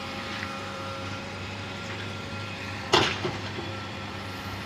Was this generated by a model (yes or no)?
yes